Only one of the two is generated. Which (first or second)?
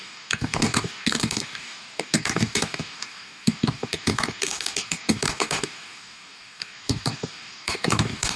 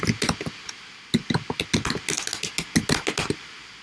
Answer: first